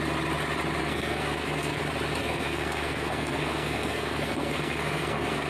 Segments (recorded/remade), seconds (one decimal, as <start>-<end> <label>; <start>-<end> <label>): 0.0-0.8 recorded; 0.8-1.8 remade; 1.8-2.2 recorded; 2.2-5.5 remade